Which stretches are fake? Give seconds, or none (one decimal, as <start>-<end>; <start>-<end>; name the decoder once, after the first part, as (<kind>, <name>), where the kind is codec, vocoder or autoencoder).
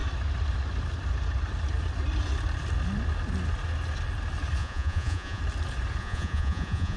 4.6-5.4 (vocoder, Vocos); 6.0-7.0